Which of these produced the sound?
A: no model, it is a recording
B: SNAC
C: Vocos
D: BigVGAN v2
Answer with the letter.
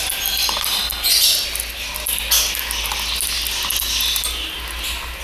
A